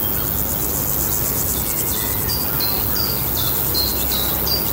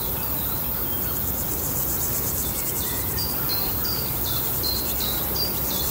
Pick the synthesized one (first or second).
second